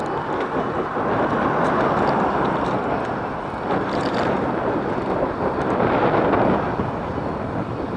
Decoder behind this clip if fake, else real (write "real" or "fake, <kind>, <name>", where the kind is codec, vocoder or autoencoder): real